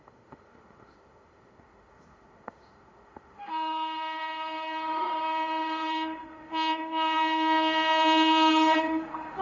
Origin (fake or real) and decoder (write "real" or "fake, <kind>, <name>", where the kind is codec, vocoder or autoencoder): fake, autoencoder, DAC-VAE